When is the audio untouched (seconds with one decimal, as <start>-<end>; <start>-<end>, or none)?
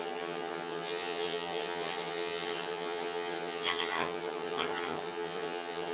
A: none